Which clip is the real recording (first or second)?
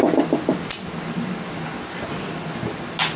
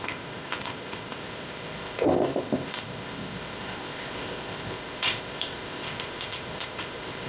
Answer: first